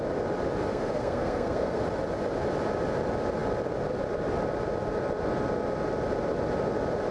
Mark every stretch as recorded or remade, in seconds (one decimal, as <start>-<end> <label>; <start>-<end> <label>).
0.0-0.7 recorded; 0.7-1.8 remade; 1.8-7.1 recorded